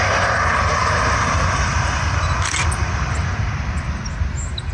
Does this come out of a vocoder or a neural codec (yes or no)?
no